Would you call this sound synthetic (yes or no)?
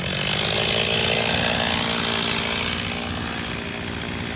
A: no